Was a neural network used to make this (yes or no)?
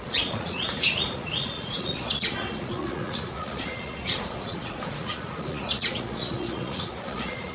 yes